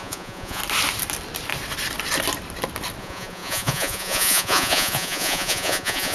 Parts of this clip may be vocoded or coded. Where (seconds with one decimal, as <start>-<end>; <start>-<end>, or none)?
0.0-0.6; 3.0-6.1